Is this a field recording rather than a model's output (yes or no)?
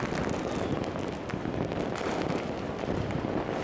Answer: yes